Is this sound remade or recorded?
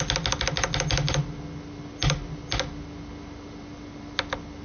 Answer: recorded